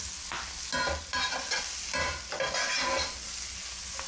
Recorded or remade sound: recorded